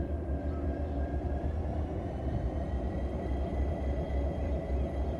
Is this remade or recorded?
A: remade